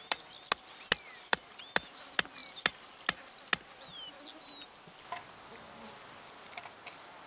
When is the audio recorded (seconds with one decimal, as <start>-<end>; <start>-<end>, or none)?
0.0-7.3